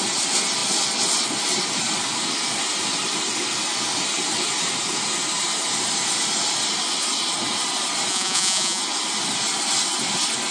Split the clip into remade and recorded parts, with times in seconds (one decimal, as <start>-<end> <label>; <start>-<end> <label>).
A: 0.0-8.1 recorded; 8.1-8.8 remade; 8.8-10.5 recorded